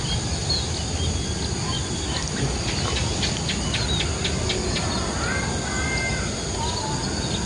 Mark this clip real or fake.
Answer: real